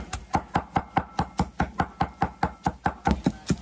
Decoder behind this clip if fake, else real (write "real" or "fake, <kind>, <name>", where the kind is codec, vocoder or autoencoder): real